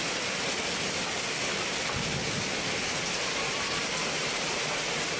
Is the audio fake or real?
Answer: real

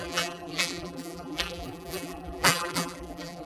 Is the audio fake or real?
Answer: fake